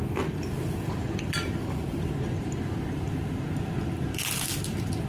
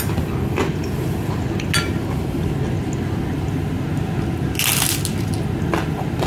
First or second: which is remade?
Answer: first